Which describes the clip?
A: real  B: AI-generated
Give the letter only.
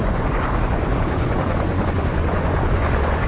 B